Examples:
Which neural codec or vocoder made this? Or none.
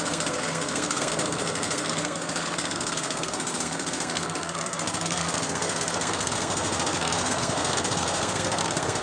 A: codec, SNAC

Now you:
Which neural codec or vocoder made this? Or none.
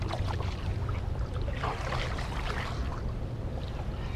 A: none